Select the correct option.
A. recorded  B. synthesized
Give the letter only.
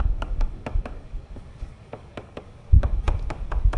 B